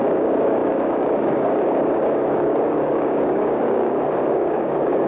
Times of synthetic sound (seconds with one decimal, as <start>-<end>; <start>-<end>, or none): 0.0-5.1